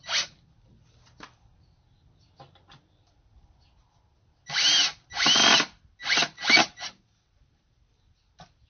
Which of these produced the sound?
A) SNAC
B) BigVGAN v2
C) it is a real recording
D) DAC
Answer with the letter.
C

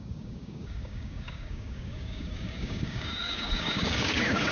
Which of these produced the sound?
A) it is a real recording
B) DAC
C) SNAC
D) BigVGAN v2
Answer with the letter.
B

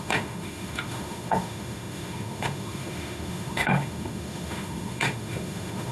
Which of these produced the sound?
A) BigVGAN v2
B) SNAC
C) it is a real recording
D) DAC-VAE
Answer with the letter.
D